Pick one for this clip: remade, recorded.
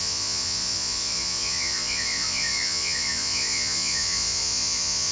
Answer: remade